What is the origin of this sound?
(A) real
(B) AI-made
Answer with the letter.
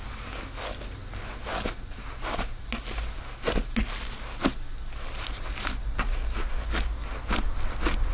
A